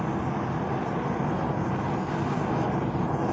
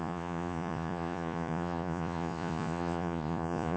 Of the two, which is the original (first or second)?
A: first